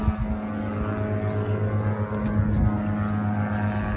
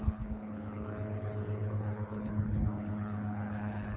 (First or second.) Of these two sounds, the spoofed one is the second